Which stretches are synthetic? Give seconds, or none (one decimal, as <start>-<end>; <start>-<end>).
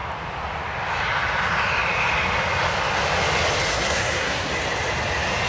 3.7-4.5